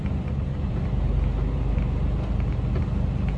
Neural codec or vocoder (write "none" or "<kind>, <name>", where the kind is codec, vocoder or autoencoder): none